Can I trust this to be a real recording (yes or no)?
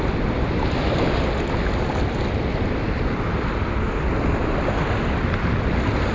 yes